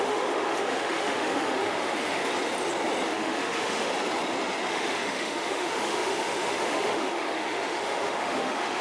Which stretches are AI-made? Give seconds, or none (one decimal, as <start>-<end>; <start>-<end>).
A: 0.0-2.2; 3.1-3.9; 4.7-8.8